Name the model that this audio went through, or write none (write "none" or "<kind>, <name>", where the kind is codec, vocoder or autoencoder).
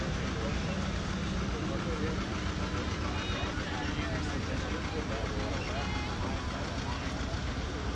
none